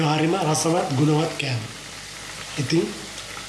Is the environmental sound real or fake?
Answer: real